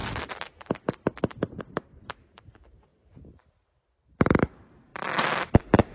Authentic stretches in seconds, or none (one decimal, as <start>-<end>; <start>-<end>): 0.0-1.6; 4.9-5.9